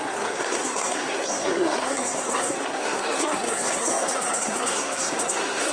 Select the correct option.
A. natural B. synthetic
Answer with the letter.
B